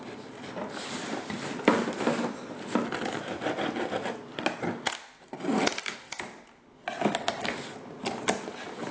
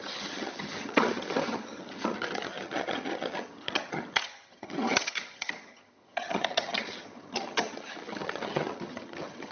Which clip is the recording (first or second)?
first